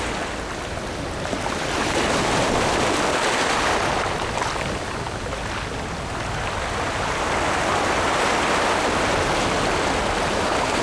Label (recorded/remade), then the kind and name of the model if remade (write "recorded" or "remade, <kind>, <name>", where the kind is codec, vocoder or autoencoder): recorded